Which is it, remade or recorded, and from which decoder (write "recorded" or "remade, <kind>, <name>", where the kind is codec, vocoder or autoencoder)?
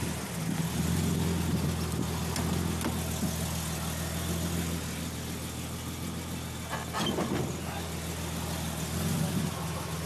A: recorded